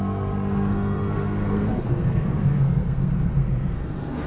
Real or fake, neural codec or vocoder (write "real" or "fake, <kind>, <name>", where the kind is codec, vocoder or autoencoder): fake, codec, SNAC